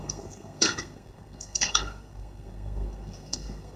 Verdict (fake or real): fake